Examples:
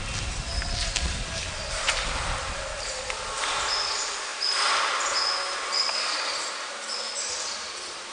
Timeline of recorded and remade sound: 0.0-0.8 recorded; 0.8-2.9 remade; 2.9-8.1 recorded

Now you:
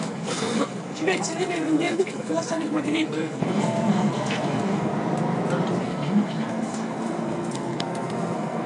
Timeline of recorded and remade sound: 0.0-4.9 remade; 4.9-5.8 recorded; 5.8-8.7 remade

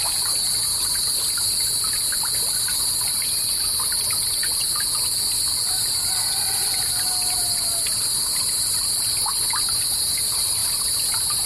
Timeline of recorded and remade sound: 0.0-11.5 recorded

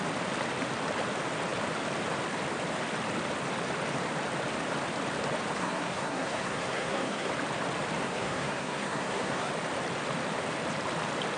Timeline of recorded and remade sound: 0.0-5.6 recorded; 5.6-7.3 remade; 7.3-8.0 recorded; 8.0-9.5 remade; 9.5-11.4 recorded